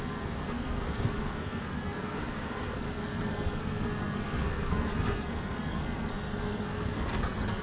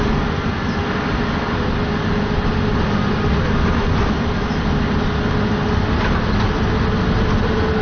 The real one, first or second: second